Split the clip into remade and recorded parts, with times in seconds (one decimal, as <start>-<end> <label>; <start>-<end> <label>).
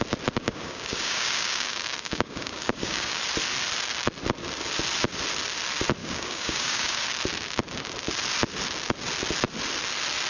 0.0-0.4 recorded; 0.4-3.2 remade; 3.2-6.0 recorded; 6.0-7.0 remade; 7.0-10.3 recorded